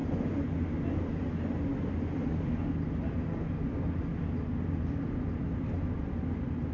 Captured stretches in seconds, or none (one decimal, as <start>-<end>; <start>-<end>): 0.0-6.7